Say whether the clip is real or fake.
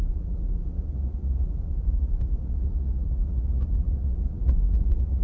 fake